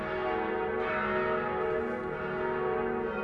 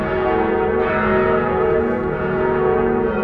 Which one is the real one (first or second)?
first